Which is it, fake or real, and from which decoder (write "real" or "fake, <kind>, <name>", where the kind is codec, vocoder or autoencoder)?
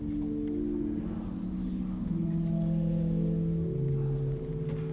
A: real